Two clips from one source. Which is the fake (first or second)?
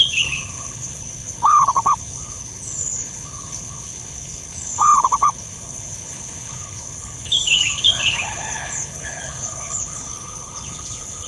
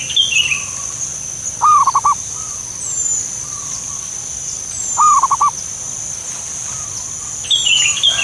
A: first